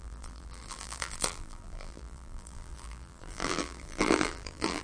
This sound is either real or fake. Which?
fake